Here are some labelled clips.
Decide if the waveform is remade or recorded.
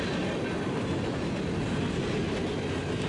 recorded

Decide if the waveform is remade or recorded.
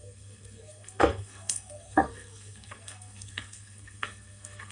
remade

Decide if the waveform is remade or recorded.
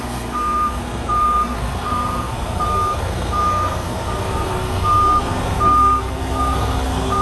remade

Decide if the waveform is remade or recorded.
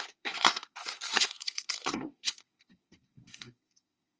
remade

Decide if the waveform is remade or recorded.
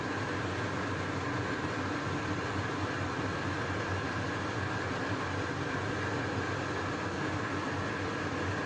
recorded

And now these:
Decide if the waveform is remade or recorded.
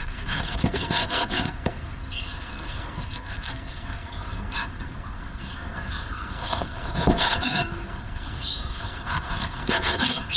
remade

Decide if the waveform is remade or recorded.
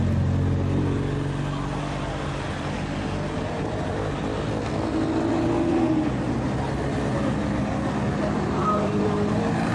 recorded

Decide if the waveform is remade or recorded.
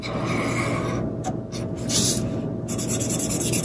recorded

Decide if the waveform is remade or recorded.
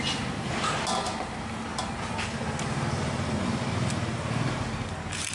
recorded